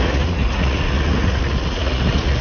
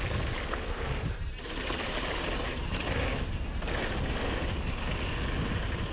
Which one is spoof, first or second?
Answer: first